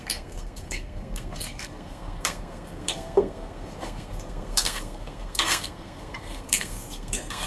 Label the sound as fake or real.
fake